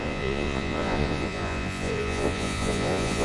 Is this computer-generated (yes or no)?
yes